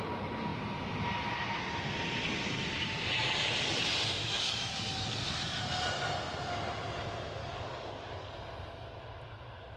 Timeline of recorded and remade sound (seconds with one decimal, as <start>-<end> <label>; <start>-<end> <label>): 0.0-4.2 recorded; 4.2-5.6 remade; 5.6-7.4 recorded; 7.4-8.3 remade; 8.3-9.8 recorded